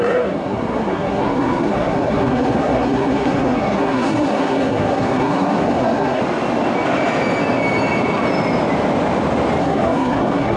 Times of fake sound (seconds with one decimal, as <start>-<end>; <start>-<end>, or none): 0.0-6.2; 9.6-10.6